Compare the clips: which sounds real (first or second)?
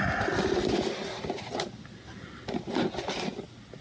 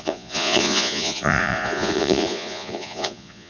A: first